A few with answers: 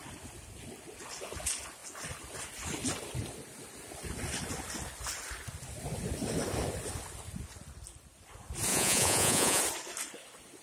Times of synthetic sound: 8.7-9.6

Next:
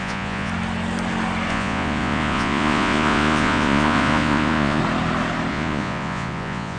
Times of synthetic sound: 0.0-0.5; 1.5-4.8; 5.5-6.8

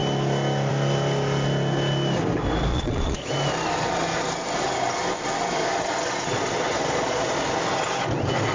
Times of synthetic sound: 2.7-3.3; 6.7-7.5

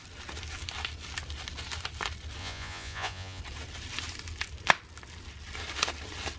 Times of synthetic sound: 2.4-3.4

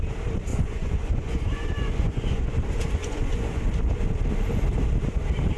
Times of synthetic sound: 0.5-2.5; 3.0-3.6

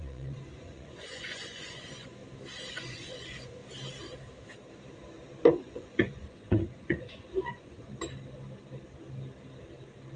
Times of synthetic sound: 0.0-2.2; 2.7-3.6; 5.5-7.9

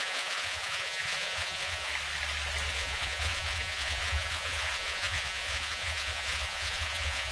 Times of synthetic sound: 0.0-1.9; 2.7-7.3